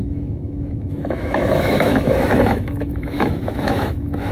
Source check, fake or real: fake